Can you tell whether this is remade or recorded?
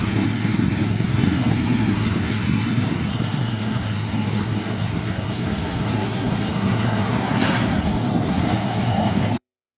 remade